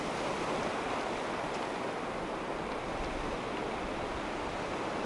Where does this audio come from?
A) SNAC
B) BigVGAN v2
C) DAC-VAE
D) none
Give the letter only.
D